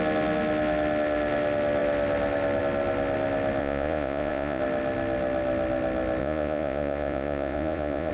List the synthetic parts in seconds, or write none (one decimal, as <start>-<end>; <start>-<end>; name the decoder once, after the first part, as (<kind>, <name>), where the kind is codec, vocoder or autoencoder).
3.6-4.6 (vocoder, Vocos); 6.2-8.1